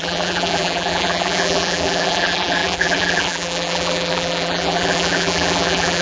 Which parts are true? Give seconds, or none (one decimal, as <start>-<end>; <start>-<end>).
none